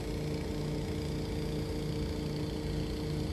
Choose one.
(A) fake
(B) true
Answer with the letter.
B